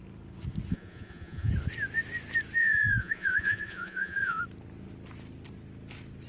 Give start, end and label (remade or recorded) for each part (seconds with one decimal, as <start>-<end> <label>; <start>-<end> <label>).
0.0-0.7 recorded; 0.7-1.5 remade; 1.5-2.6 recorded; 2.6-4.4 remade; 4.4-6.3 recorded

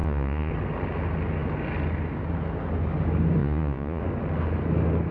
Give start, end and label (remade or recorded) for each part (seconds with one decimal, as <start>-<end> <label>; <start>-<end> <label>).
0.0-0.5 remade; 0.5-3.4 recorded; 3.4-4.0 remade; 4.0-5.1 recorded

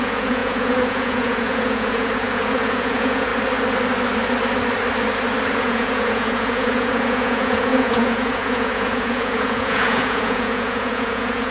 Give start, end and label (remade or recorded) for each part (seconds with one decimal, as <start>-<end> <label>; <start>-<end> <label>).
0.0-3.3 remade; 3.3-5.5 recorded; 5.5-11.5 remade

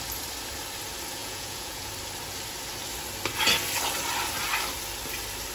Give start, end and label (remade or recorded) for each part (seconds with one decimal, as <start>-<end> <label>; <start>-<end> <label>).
0.0-1.2 recorded; 1.2-1.9 remade; 1.9-5.5 recorded

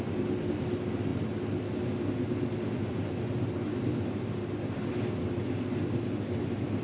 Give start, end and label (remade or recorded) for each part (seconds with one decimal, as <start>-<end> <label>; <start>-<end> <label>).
0.0-6.8 recorded

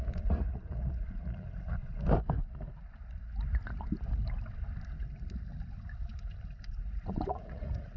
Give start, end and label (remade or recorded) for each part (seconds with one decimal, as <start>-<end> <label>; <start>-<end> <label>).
0.0-1.8 remade; 1.8-6.6 recorded; 6.6-8.0 remade